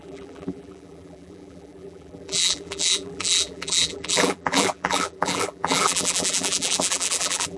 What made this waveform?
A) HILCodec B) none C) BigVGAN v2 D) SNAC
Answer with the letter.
C